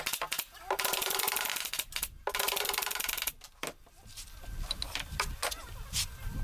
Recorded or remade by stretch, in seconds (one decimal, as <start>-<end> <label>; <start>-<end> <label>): 0.0-1.5 recorded; 1.5-5.3 remade; 5.3-6.4 recorded